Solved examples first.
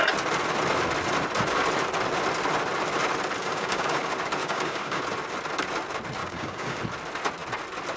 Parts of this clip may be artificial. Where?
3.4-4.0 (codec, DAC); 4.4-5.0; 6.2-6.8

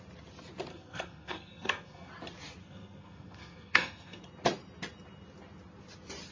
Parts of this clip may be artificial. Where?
0.7-2.1 (codec, SNAC); 2.6-4.2

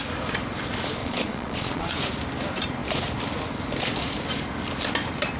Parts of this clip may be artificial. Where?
1.0-1.9 (vocoder, Vocos)

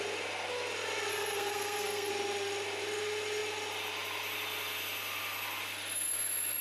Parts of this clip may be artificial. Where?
1.1-2.1 (codec, SNAC)

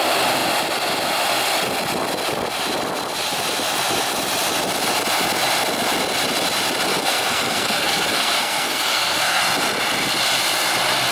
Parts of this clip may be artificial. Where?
6.9-9.4 (codec, SNAC)

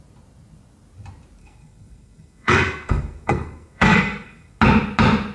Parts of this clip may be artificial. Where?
1.4-4.6 (codec, SNAC)

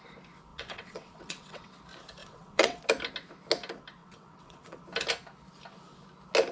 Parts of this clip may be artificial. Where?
0.5-1.8 (vocoder, WaveNeXt); 2.2-2.8; 4.0-4.8

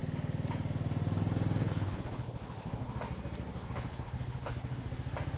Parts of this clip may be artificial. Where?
1.6-2.9 (codec, HILCodec); 3.5-4.9